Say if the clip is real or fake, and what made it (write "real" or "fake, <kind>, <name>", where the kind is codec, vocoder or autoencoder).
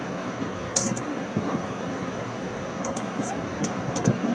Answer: fake, codec, SNAC